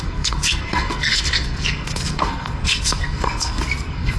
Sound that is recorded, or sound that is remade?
remade